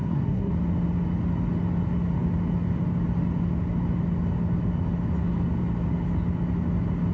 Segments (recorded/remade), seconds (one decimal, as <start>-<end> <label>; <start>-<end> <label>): 0.0-0.5 remade; 0.5-7.1 recorded

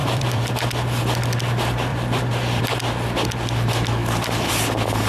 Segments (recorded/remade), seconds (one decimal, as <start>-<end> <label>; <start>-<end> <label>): 0.0-0.5 remade; 0.5-1.9 recorded; 1.9-2.6 remade; 2.6-4.0 recorded; 4.0-4.5 remade; 4.5-5.1 recorded

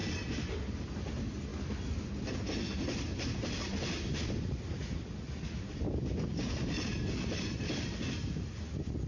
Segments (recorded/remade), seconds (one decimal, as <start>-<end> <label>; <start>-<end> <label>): 0.0-9.1 recorded

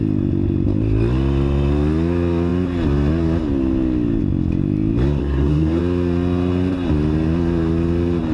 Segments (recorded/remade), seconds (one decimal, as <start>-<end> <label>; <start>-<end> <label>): 0.0-5.2 recorded; 5.2-5.8 remade; 5.8-8.3 recorded